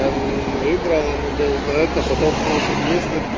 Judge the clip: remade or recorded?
recorded